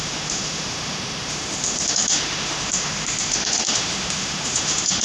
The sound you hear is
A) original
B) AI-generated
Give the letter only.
B